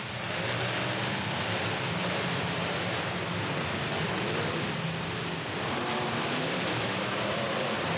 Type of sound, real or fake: real